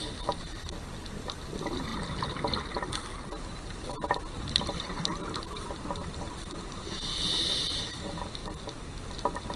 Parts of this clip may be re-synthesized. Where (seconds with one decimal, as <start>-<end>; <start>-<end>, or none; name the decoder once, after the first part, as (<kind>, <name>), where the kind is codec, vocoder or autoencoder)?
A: none